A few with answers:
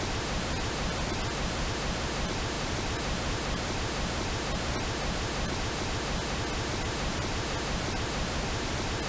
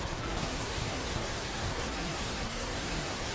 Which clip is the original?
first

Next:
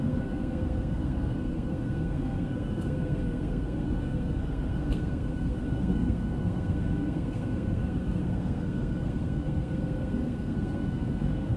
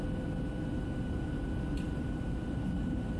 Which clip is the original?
second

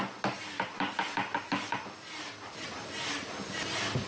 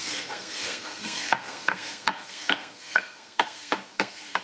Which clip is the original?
first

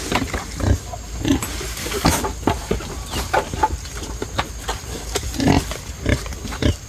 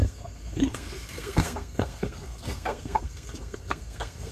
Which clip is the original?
first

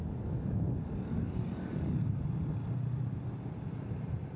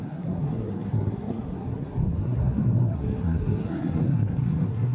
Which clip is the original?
first